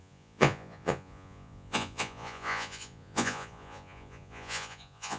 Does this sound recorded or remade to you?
remade